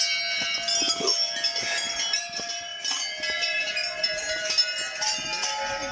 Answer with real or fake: real